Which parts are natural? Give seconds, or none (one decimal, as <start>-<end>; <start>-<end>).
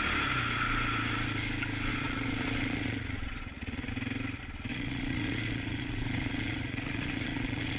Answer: 0.0-1.9; 3.9-4.7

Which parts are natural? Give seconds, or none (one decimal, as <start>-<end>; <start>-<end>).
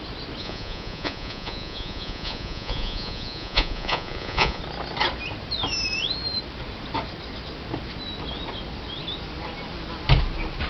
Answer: 0.0-0.4; 4.6-10.7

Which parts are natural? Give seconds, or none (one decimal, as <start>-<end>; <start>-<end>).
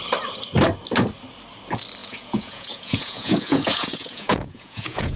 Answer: 0.0-2.0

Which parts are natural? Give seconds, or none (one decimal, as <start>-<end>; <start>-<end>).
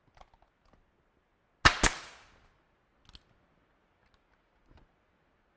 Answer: 0.0-5.6